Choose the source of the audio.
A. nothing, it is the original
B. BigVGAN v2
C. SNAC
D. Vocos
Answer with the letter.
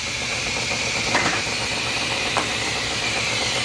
B